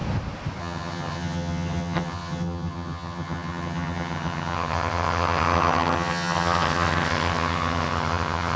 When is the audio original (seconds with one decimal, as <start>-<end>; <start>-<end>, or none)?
0.0-0.6